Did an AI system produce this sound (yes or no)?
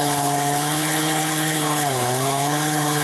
yes